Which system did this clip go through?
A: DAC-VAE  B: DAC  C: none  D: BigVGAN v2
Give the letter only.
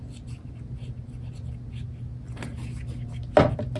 C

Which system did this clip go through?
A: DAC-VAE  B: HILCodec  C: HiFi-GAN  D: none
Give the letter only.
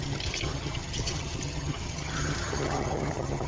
C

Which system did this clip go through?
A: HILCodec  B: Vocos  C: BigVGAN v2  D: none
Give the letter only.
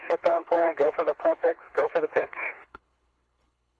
A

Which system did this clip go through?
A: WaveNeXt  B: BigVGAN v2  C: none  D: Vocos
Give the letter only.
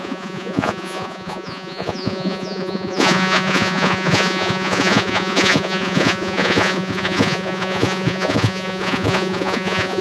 D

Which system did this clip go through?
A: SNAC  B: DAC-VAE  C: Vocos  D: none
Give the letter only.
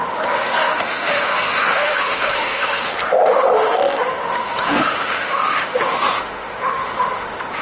B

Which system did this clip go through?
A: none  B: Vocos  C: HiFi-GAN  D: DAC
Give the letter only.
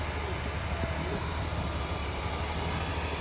A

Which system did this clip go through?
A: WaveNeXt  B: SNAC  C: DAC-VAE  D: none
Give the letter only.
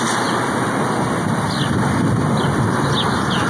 D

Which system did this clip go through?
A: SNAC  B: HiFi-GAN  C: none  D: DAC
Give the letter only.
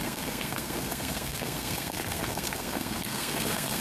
A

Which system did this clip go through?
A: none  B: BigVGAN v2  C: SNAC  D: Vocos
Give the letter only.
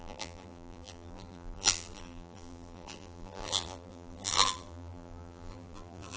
B